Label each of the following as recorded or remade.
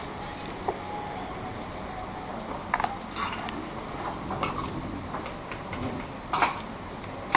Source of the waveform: recorded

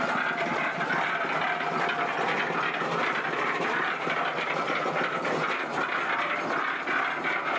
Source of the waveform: recorded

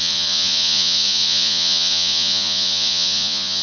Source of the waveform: remade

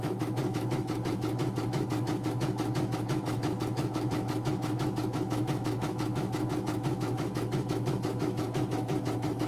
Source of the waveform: remade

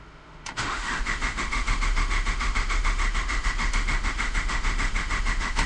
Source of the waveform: remade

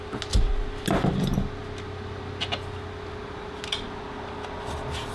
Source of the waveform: recorded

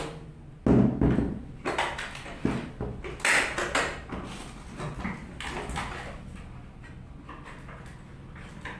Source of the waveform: recorded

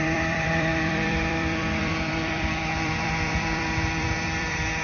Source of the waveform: remade